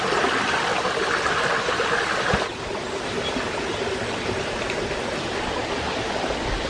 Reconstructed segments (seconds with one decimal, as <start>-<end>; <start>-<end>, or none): none